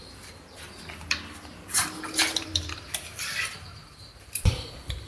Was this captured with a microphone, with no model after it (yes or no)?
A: no